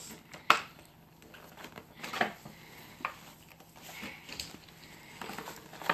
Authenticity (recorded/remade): remade